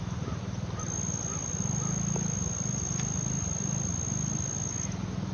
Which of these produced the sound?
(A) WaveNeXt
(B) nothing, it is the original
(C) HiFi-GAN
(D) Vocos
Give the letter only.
B